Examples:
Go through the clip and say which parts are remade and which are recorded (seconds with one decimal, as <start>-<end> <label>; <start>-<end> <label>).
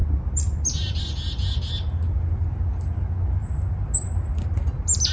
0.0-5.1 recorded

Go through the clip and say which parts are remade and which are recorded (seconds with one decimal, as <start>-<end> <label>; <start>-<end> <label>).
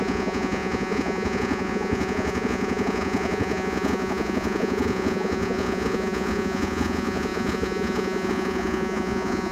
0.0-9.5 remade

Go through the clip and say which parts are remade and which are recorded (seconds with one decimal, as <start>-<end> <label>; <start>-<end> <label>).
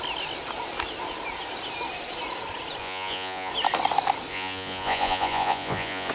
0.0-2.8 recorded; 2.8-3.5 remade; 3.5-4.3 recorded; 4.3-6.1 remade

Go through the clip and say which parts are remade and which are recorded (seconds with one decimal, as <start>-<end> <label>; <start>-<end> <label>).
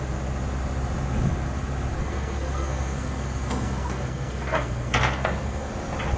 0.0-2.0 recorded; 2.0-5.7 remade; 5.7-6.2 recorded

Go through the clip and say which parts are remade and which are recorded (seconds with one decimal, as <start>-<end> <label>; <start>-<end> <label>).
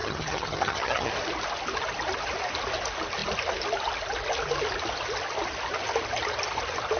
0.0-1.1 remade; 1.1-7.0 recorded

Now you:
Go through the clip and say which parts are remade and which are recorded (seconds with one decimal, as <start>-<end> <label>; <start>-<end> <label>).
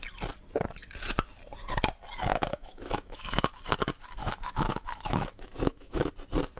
0.0-2.3 recorded; 2.3-3.5 remade; 3.5-4.2 recorded; 4.2-6.1 remade; 6.1-6.6 recorded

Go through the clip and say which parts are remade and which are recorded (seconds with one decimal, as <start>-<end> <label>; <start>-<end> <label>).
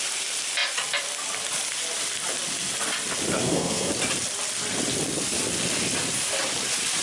0.0-3.4 recorded; 3.4-3.9 remade; 3.9-7.0 recorded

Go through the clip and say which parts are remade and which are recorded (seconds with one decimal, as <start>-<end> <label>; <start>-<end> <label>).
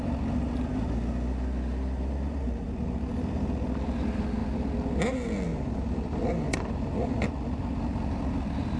0.0-4.4 recorded; 4.4-5.0 remade; 5.0-5.5 recorded; 5.5-6.3 remade; 6.3-8.8 recorded